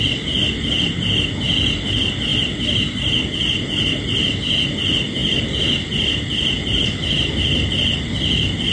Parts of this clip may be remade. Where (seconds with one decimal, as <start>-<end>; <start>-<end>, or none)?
none